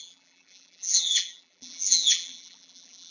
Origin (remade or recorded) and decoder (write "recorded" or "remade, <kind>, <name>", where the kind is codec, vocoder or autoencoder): remade, vocoder, BigVGAN v2